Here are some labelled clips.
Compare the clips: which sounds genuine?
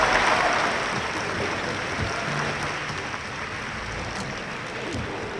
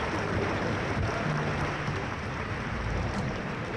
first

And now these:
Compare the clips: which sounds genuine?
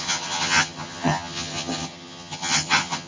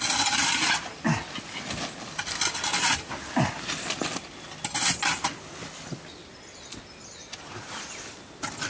second